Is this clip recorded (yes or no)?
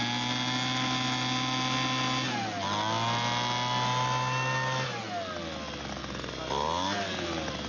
yes